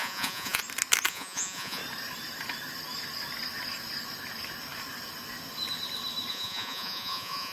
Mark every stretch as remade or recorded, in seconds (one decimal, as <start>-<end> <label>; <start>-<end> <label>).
0.0-0.6 remade; 0.6-1.1 recorded; 1.1-1.8 remade; 1.8-6.3 recorded; 6.3-7.5 remade